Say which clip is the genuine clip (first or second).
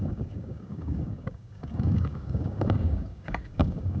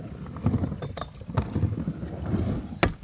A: second